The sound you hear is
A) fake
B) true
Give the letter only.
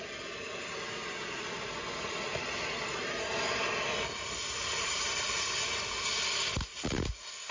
B